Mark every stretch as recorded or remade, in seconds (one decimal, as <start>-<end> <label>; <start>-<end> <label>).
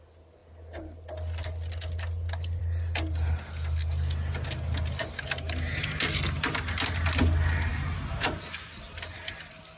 0.0-7.7 recorded; 7.7-9.4 remade; 9.4-9.8 recorded